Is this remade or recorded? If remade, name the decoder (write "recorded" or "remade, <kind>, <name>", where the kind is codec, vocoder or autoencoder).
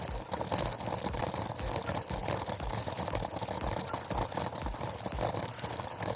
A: recorded